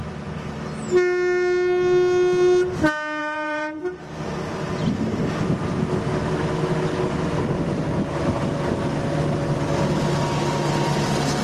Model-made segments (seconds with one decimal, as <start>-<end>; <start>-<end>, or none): 3.2-4.7